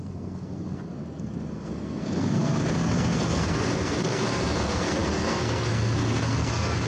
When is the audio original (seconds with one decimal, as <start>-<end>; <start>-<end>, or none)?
none